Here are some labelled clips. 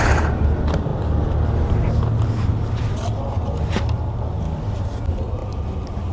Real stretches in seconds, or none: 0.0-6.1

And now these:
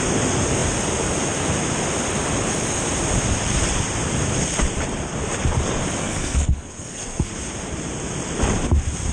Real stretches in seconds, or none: 0.0-6.0; 7.3-9.1

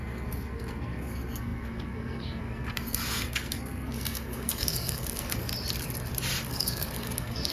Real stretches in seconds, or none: 5.5-6.5

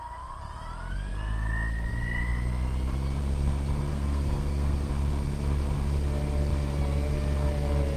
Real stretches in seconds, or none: 0.0-3.9; 4.9-8.0

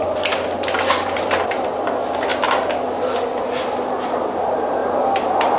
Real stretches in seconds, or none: 0.0-5.6

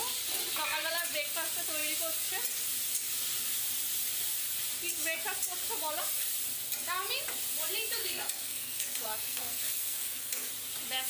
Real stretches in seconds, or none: 0.0-8.0; 10.5-11.1

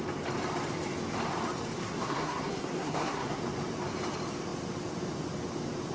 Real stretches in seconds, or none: 0.0-1.8; 3.4-5.9

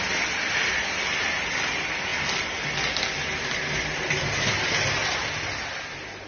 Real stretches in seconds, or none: 0.0-6.3